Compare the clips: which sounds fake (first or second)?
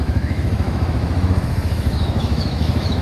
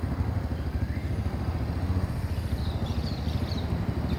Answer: first